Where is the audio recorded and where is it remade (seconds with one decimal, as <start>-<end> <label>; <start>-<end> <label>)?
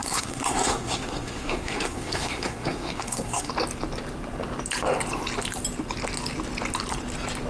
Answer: 0.0-3.5 remade; 3.5-7.5 recorded